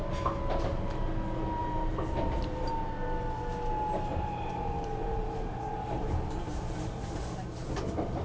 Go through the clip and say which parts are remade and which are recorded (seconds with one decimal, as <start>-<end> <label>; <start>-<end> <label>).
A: 0.0-1.6 recorded; 1.6-2.8 remade; 2.8-4.1 recorded; 4.1-7.2 remade; 7.2-8.2 recorded